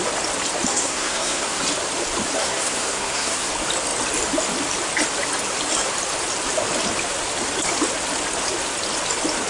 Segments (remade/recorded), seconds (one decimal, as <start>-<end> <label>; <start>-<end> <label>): 0.0-0.7 recorded; 0.7-1.6 remade; 1.6-2.4 recorded; 2.4-3.5 remade; 3.5-9.5 recorded